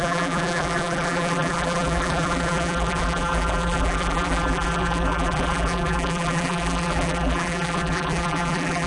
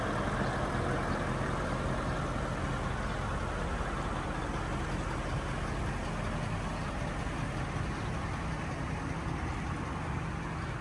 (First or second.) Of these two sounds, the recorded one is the second